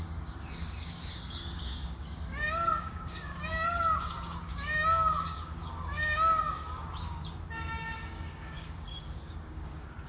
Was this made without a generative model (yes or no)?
no